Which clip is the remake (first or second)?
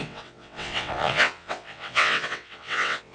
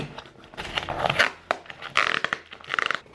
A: first